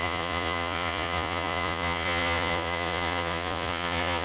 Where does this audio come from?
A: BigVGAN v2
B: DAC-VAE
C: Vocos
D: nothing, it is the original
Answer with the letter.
C